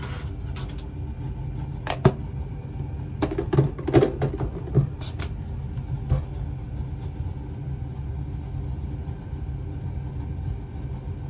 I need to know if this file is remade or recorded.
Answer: recorded